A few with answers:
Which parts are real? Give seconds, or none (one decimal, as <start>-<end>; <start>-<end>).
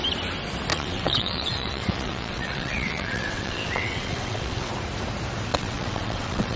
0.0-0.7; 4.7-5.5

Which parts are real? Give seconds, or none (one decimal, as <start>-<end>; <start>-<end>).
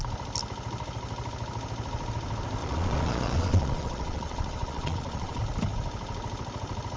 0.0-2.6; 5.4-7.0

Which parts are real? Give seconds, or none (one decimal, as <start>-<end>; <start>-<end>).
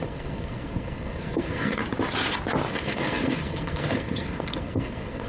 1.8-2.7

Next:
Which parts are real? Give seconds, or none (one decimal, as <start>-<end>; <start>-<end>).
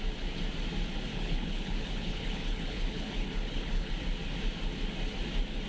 0.0-1.1; 3.9-5.7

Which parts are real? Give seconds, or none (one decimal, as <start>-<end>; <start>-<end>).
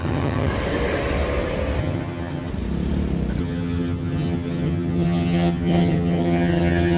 0.5-1.8; 2.5-3.4